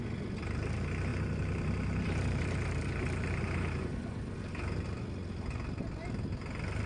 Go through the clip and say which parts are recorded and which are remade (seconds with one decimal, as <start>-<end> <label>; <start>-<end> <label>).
0.0-1.1 recorded; 1.1-3.9 remade; 3.9-6.9 recorded